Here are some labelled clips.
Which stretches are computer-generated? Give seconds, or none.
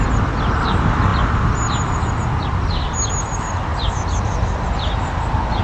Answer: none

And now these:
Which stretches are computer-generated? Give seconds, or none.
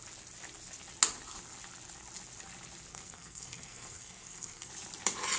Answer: 2.9-4.7 (codec, SNAC)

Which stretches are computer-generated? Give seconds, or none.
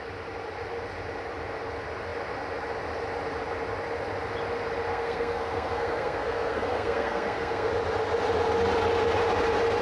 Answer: 4.9-7.7 (codec, SNAC)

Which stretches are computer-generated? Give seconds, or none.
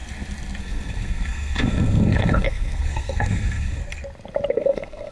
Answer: 0.6-3.8 (codec, SNAC); 4.5-5.1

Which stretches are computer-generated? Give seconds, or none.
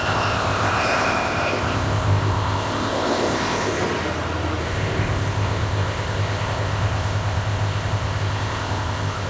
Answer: 0.0-3.8 (codec, ZipCodec); 4.6-9.3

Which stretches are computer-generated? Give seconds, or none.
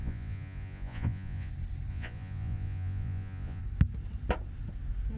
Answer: 0.0-1.5 (vocoder, Vocos); 1.9-3.6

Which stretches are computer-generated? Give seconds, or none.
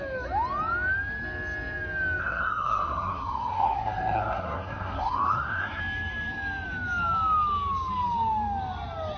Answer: 2.2-5.8 (codec, SNAC)